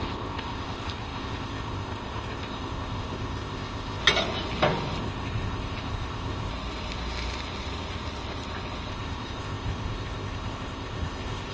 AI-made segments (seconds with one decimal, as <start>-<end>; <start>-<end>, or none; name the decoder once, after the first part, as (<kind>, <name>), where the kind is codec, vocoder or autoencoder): 0.0-4.0 (codec, ZipCodec); 5.0-6.5; 8.9-11.5